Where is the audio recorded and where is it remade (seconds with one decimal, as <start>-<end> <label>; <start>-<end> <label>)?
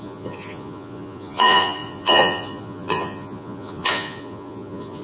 0.0-5.0 remade